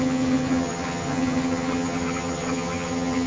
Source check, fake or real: fake